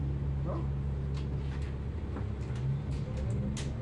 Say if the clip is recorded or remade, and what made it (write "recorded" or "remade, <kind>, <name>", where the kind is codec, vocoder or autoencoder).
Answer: recorded